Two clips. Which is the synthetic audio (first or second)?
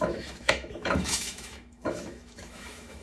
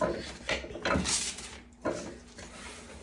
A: first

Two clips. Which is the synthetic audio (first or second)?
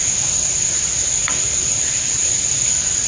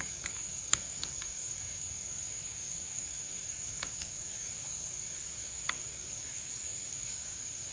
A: second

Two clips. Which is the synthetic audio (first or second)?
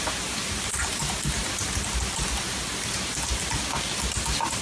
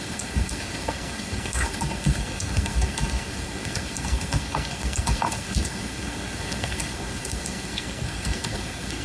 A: second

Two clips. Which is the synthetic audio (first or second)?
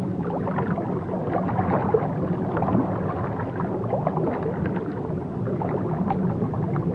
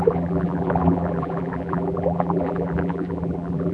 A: second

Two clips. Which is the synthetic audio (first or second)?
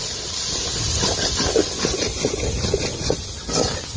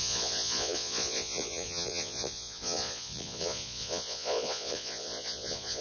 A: second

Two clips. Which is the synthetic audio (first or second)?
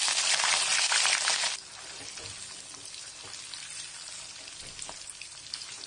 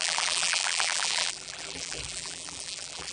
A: second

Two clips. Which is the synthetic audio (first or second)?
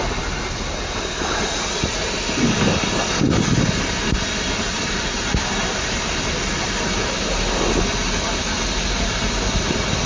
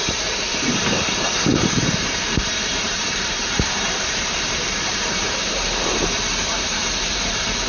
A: second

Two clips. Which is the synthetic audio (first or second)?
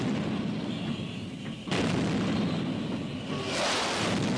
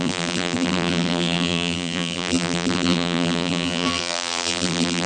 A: second